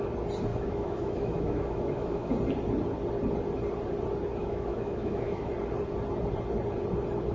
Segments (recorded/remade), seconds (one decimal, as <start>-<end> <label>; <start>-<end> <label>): 0.0-0.5 recorded; 0.5-2.3 remade; 2.3-4.4 recorded; 4.4-5.5 remade; 5.5-7.3 recorded